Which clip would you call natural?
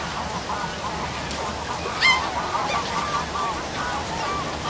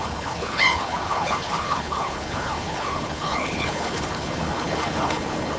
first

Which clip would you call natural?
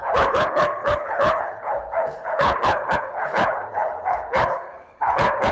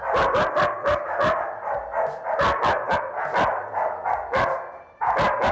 second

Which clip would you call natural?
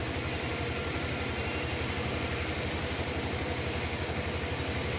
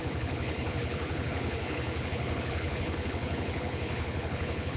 first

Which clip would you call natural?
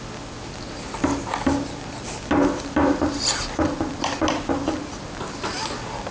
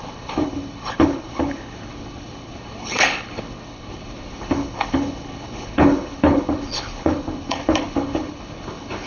first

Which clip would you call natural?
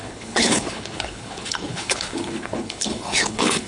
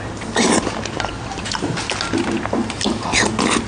second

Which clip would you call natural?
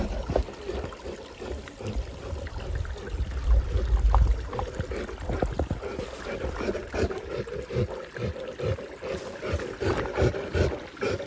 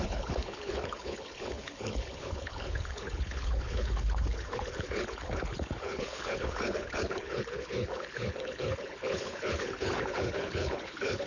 first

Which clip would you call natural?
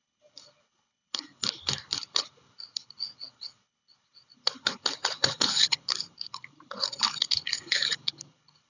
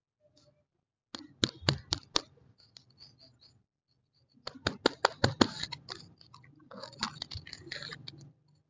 second